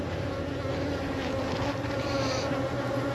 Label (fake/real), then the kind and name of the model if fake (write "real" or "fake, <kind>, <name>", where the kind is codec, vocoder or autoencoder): real